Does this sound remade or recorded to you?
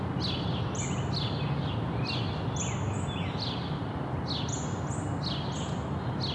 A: recorded